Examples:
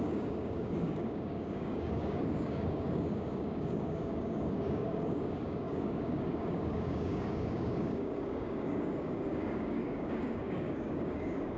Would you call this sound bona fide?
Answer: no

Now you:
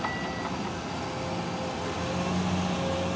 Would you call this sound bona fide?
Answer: yes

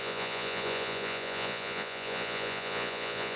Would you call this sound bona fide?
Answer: no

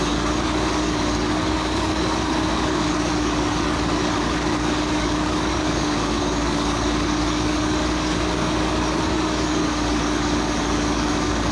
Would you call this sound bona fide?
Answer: no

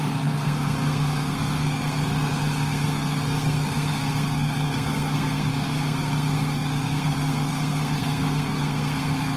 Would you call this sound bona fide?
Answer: no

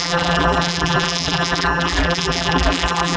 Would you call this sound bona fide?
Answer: no